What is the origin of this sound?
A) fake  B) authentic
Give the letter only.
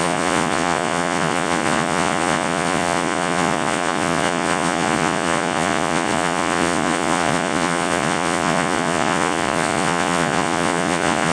A